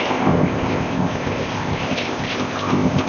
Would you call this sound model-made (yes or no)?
yes